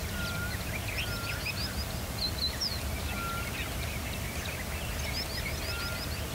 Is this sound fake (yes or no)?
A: no